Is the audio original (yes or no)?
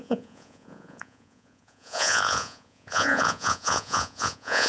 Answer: no